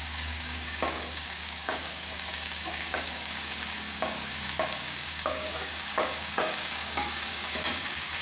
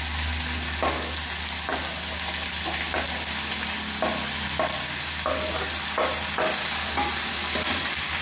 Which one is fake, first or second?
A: first